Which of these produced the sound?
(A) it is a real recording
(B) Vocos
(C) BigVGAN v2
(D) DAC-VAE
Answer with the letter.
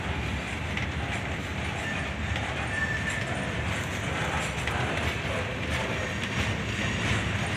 A